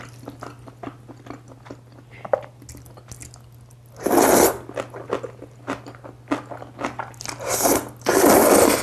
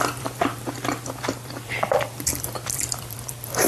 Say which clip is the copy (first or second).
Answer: second